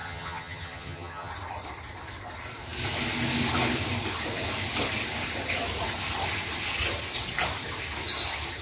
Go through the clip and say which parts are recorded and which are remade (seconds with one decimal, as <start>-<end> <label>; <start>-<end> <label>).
0.0-1.3 remade; 1.3-8.6 recorded